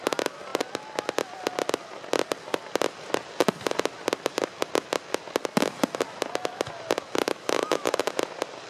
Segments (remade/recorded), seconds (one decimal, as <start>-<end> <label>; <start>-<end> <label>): 0.0-7.2 recorded; 7.2-8.1 remade; 8.1-8.7 recorded